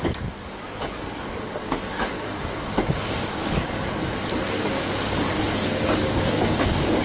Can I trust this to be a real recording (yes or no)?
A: no